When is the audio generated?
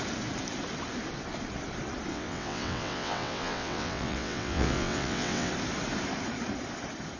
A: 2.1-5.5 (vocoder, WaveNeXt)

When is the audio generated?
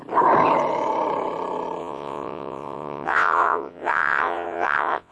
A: 1.8-5.1 (vocoder, WaveNeXt)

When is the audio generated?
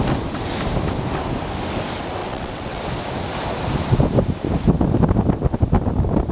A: 2.2-2.8 (vocoder, WaveNeXt)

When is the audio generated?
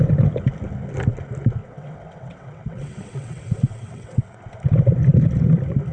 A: 1.6-4.4 (vocoder, WaveNeXt)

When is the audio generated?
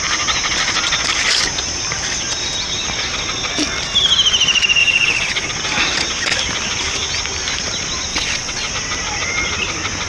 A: 4.8-5.5 (vocoder, WaveNeXt); 8.1-8.7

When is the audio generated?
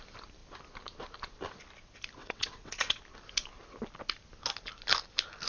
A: 2.2-3.0 (vocoder, WaveNeXt)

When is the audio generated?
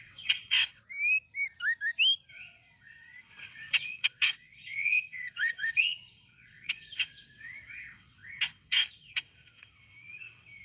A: 0.0-0.8 (vocoder, WaveNeXt); 2.3-10.6